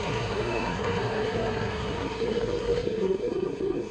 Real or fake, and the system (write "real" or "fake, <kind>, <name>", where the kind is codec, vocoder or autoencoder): fake, codec, SNAC